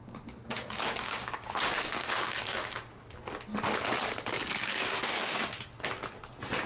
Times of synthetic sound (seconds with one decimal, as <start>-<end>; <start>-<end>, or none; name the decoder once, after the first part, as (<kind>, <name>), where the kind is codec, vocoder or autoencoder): 0.0-3.1 (codec, DAC); 4.6-5.6